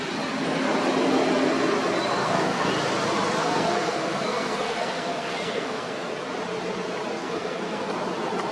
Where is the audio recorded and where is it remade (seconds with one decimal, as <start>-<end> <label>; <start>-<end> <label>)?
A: 0.0-2.2 recorded; 2.2-2.7 remade; 2.7-3.4 recorded; 3.4-6.1 remade; 6.1-7.2 recorded; 7.2-7.9 remade; 7.9-8.5 recorded

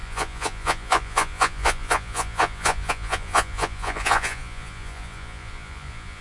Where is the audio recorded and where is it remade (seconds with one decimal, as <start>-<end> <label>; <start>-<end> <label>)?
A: 0.0-6.2 remade

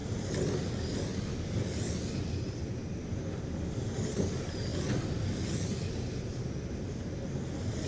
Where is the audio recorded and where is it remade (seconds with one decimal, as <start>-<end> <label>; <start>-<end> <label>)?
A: 0.0-7.9 recorded

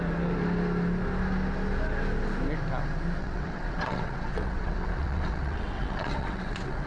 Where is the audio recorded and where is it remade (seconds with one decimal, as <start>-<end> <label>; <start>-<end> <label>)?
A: 0.0-3.2 recorded; 3.2-6.9 remade